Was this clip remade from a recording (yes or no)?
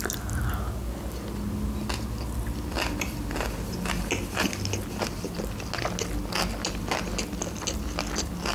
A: no